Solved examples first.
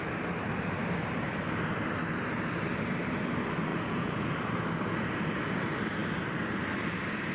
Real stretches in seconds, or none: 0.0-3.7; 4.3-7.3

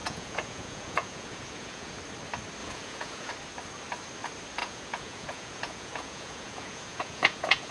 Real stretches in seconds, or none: 2.0-2.6; 3.3-4.6

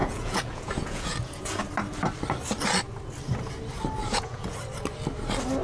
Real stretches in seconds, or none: 1.6-4.0; 4.6-5.6

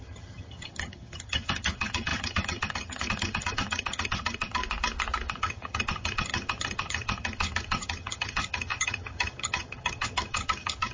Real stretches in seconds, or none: 4.6-5.3

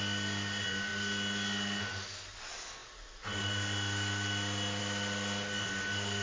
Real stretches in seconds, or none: 0.0-6.2

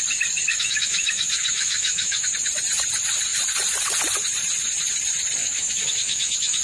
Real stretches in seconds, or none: 0.0-0.5; 2.3-5.4

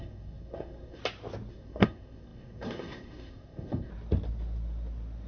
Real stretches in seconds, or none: 1.0-1.5; 3.9-5.3

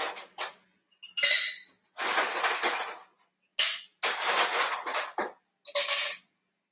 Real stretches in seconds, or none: 0.0-6.7